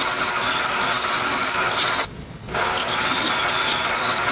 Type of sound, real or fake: real